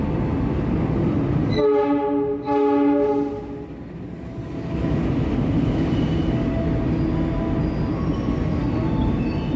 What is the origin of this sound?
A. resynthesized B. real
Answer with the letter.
B